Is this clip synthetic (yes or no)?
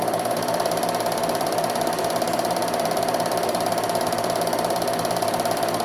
yes